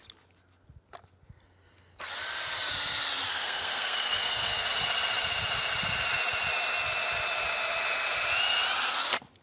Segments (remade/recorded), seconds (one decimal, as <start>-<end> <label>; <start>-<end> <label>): 0.0-3.3 recorded; 3.3-4.7 remade; 4.7-9.4 recorded